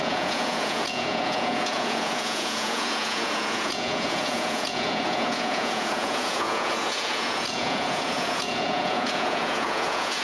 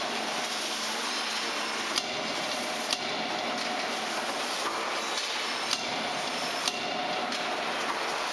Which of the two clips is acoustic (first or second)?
second